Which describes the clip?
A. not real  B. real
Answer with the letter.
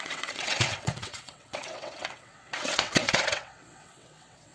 A